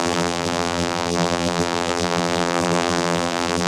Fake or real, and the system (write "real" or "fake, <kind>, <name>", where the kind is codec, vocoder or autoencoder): fake, vocoder, BigVGAN v2